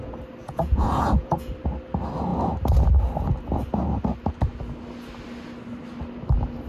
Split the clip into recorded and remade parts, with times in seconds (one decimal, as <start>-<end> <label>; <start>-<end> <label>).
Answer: 0.0-0.4 recorded; 0.4-1.5 remade; 1.5-6.7 recorded